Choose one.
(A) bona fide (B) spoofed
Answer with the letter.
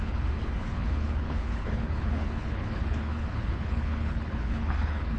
B